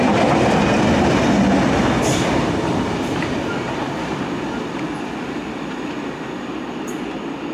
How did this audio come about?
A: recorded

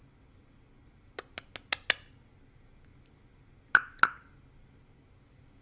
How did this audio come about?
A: recorded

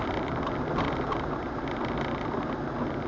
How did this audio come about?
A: recorded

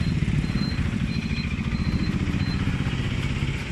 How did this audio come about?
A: remade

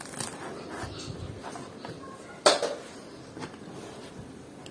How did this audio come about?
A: recorded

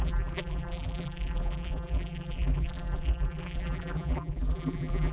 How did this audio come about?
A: remade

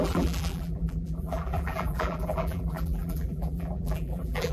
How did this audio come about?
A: remade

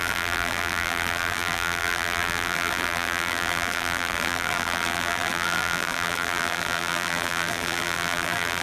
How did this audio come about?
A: remade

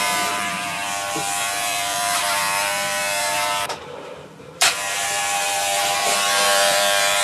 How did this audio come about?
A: remade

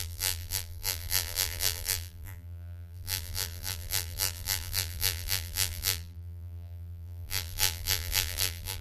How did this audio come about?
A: remade